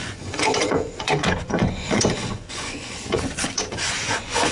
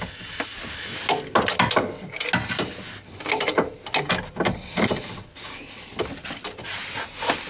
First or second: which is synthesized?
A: first